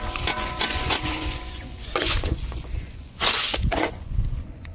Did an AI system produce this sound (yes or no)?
yes